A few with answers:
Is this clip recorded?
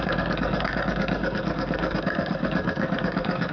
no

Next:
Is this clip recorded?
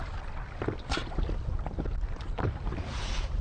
yes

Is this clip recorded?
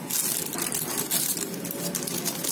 yes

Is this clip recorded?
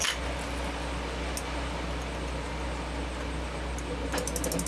yes